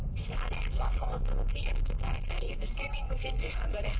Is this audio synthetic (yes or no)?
yes